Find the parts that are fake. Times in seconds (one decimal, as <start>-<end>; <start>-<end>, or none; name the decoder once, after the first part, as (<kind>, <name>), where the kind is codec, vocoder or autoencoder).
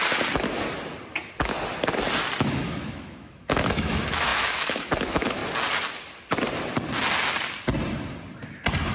2.4-5.4 (autoencoder, DAC-VAE)